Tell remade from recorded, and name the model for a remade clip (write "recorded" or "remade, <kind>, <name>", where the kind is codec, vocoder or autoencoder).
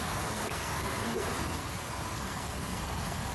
remade, codec, SNAC